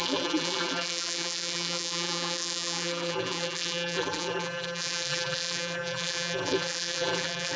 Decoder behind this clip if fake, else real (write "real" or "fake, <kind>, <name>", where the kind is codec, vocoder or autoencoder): fake, vocoder, BigVGAN v2